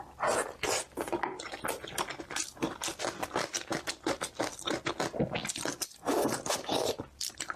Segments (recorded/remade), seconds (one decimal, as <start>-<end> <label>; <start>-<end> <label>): 0.0-7.6 recorded